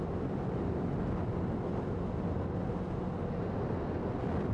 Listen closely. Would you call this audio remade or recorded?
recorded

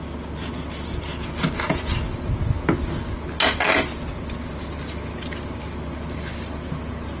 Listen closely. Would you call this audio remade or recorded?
recorded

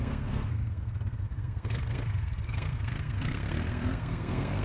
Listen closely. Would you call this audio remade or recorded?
remade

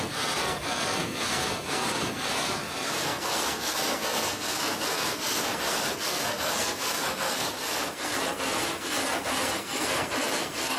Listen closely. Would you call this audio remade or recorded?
remade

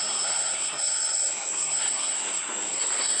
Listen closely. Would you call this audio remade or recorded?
remade